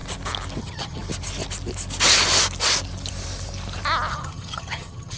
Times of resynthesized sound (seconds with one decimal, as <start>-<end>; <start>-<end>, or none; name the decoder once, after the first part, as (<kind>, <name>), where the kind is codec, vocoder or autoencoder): 0.6-1.0 (vocoder, HiFi-GAN); 4.1-5.2